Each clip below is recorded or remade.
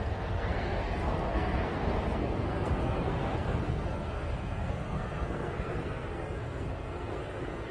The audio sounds remade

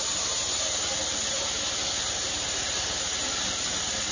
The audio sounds recorded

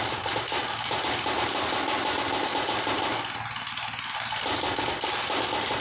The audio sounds recorded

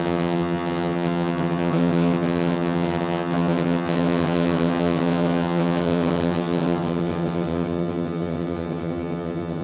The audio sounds remade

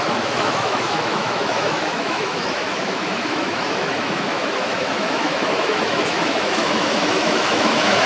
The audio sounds remade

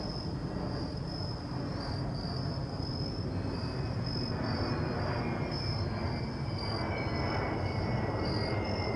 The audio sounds recorded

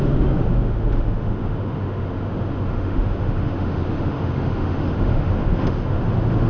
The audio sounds remade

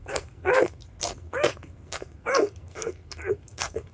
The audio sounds remade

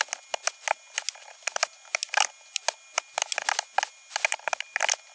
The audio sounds recorded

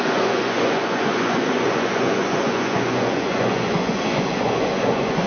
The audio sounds remade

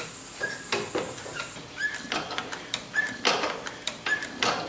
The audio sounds remade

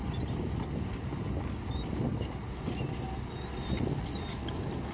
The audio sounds recorded